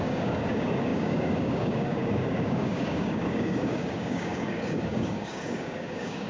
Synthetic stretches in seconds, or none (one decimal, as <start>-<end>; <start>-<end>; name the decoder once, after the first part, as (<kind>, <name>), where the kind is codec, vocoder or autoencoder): 0.0-6.3 (codec, DAC)

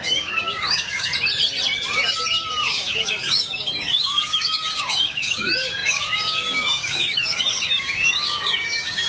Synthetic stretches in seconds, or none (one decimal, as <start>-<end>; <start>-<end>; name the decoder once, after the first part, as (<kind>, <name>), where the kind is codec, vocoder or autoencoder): 0.0-1.1 (codec, DAC); 1.9-9.1

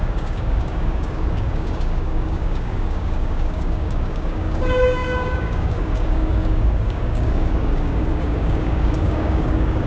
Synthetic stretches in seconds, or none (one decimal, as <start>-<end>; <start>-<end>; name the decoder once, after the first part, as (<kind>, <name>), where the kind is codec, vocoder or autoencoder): 0.0-9.9 (codec, DAC)

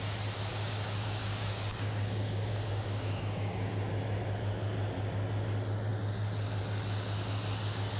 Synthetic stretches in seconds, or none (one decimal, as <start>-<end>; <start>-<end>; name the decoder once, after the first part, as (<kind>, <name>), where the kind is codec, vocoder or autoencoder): 0.5-3.9 (codec, DAC)

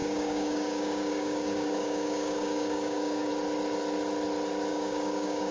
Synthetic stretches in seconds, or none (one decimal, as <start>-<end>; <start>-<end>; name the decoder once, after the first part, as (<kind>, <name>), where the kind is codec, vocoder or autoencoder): 0.0-3.3 (codec, DAC); 4.7-5.5

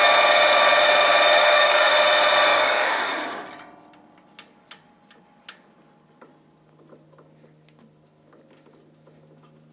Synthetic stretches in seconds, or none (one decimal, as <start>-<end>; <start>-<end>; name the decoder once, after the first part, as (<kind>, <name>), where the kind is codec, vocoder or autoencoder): 1.4-1.9 (codec, DAC); 2.5-3.5

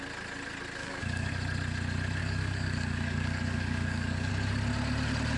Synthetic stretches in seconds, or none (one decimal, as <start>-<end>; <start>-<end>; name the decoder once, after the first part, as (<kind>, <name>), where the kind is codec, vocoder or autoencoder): 0.8-1.3 (codec, DAC); 2.2-4.3